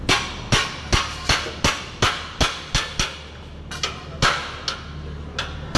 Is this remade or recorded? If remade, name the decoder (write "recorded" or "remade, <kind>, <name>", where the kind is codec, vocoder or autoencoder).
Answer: recorded